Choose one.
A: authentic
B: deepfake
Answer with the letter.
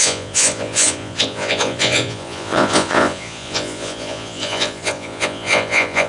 B